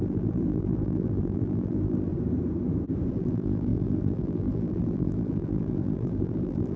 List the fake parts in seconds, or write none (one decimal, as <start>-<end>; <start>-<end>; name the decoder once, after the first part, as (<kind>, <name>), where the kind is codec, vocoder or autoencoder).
0.0-2.1 (vocoder, BigVGAN v2); 3.1-6.8

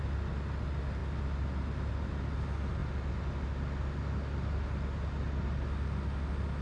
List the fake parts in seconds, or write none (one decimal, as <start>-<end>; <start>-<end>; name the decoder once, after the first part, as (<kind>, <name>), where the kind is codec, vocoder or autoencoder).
none

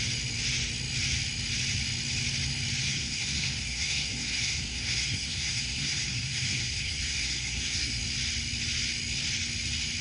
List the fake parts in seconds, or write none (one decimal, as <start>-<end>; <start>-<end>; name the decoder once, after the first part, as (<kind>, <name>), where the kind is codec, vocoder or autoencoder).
2.8-8.0 (codec, SNAC)

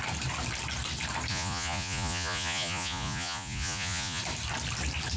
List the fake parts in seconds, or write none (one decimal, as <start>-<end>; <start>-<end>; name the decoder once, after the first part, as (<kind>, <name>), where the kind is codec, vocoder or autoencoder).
1.3-4.2 (vocoder, Vocos)

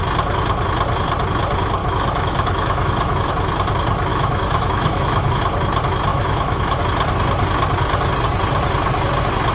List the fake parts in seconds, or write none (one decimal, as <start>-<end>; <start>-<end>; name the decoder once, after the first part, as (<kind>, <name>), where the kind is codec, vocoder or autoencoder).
1.8-3.3 (autoencoder, DAC-VAE); 4.1-5.4; 6.1-6.8